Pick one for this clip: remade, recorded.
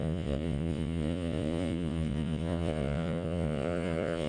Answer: remade